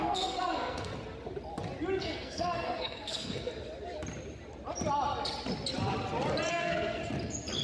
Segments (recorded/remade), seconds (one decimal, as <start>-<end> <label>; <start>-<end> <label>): 0.0-0.9 remade; 0.9-2.0 recorded; 2.0-3.5 remade; 3.5-6.5 recorded; 6.5-7.0 remade; 7.0-7.6 recorded